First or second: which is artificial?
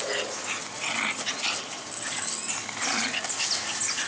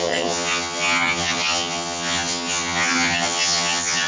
second